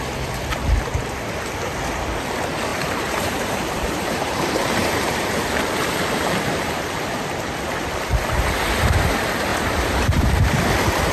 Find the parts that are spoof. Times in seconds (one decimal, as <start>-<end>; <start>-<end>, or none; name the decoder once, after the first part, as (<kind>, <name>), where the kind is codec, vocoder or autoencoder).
2.7-7.0 (vocoder, BigVGAN v2); 9.5-10.2